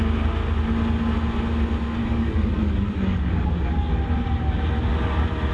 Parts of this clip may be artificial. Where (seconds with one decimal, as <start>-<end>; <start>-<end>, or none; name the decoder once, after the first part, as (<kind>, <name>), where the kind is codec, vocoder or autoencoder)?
2.0-3.9 (codec, DAC)